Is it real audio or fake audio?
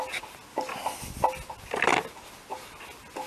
real